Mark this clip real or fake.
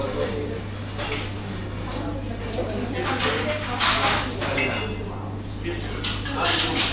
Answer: real